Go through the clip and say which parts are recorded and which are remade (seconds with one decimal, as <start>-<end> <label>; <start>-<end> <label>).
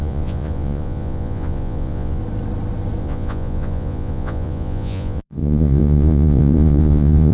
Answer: 0.0-2.2 remade; 2.2-3.0 recorded; 3.0-7.3 remade